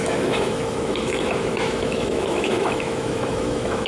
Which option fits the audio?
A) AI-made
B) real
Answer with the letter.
A